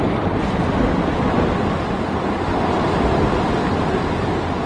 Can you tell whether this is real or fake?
real